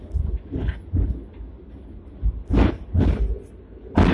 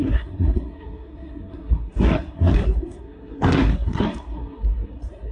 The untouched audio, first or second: first